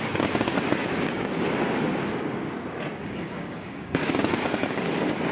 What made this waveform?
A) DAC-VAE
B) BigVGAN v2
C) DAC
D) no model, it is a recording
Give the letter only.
C